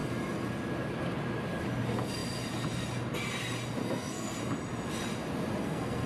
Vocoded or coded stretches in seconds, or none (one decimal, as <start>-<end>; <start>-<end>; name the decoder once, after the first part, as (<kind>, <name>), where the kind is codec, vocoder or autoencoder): 3.8-4.4 (codec, SNAC); 5.6-6.1